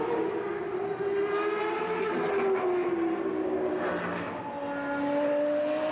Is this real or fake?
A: real